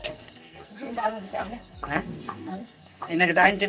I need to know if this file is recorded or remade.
remade